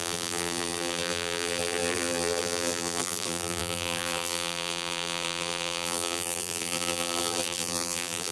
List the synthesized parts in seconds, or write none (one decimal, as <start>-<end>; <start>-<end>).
0.0-8.3